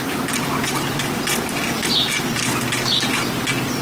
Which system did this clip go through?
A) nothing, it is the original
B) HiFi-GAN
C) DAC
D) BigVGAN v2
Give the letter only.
A